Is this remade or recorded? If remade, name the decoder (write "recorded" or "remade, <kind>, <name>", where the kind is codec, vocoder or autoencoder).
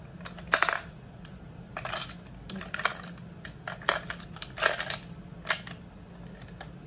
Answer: recorded